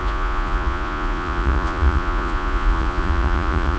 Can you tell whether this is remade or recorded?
remade